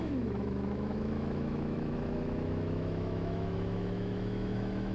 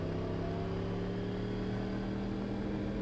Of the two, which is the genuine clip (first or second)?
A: second